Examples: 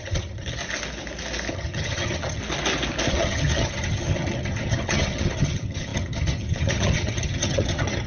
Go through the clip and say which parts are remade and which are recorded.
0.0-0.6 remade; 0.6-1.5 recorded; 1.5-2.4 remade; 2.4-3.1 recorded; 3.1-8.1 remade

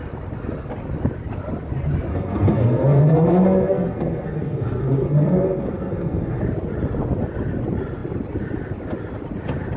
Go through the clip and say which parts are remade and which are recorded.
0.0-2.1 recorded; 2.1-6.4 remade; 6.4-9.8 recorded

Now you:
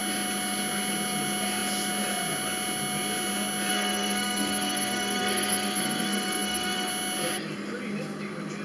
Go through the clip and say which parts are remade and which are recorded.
0.0-3.7 recorded; 3.7-6.9 remade; 6.9-8.6 recorded

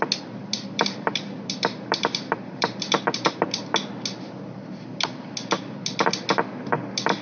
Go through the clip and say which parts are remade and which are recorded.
0.0-0.4 recorded; 0.4-3.6 remade; 3.6-7.2 recorded

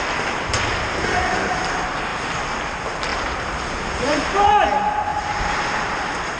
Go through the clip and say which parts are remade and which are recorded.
0.0-3.1 recorded; 3.1-4.5 remade; 4.5-5.1 recorded; 5.1-5.9 remade; 5.9-6.4 recorded

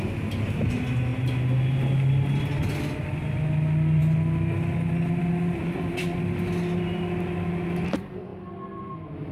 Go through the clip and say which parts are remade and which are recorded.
0.0-9.3 recorded

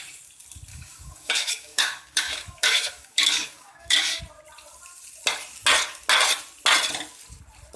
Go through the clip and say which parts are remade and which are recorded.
0.0-0.7 recorded; 0.7-4.2 remade; 4.2-7.8 recorded

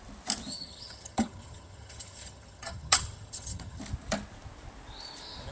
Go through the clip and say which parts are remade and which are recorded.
0.0-0.5 recorded; 0.5-3.8 remade; 3.8-5.5 recorded